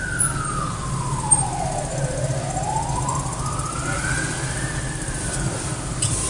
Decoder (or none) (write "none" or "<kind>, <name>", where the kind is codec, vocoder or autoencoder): none